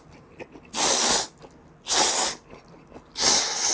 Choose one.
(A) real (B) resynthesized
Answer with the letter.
A